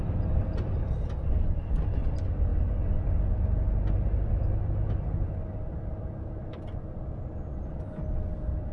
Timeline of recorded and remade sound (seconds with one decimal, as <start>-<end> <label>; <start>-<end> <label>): 0.0-8.7 recorded